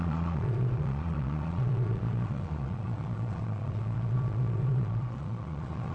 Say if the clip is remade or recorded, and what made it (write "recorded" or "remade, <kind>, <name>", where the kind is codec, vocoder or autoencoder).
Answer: remade, vocoder, Vocos